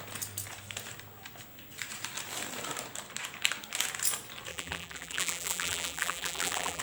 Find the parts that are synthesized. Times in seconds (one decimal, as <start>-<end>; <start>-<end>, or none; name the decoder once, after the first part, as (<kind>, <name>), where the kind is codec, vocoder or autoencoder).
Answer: 4.5-6.8 (vocoder, BigVGAN v2)